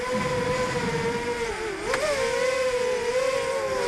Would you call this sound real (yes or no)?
yes